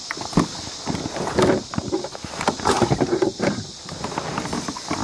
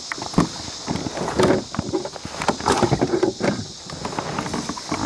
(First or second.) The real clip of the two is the second